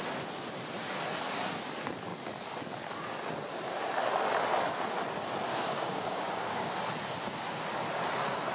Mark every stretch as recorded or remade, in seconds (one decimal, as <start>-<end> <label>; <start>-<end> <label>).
0.0-5.5 recorded; 5.5-6.7 remade; 6.7-8.5 recorded